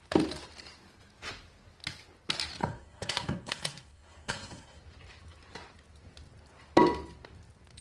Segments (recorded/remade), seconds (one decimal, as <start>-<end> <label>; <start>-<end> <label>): 0.0-2.6 recorded; 2.6-4.8 remade; 4.8-7.8 recorded

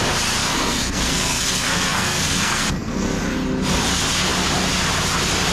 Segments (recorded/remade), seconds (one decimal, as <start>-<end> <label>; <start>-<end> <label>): 0.0-0.4 recorded; 0.4-3.2 remade; 3.2-5.5 recorded